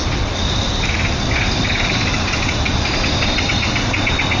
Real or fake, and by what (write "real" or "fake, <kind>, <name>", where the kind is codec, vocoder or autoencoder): real